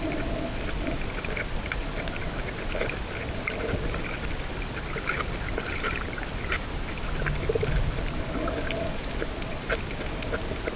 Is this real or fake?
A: real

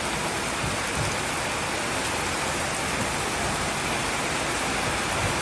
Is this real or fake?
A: real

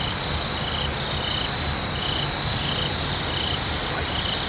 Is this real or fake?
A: real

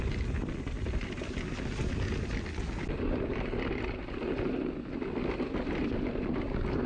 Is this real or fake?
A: real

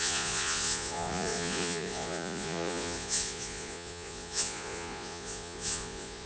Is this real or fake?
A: fake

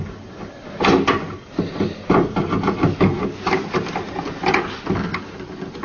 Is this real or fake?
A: real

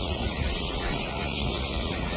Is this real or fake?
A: fake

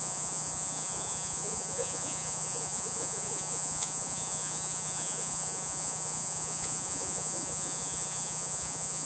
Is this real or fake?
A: fake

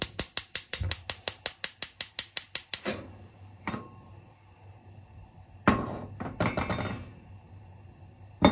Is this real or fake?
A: real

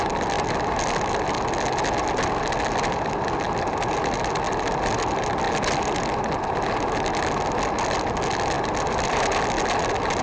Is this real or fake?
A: real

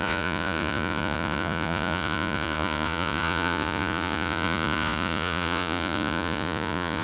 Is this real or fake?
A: fake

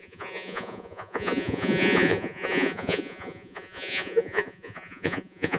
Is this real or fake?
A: fake